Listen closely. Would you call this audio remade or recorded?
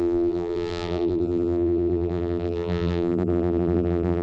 remade